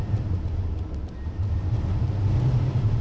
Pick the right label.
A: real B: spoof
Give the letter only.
A